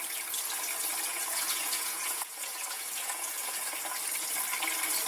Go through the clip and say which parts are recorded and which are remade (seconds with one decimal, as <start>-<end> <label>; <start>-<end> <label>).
0.0-1.1 recorded; 1.1-3.7 remade; 3.7-5.1 recorded